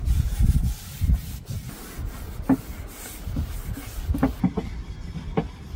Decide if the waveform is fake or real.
real